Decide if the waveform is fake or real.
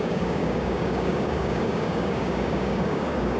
fake